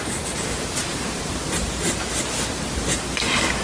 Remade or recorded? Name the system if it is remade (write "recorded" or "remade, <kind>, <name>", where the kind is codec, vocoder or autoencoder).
recorded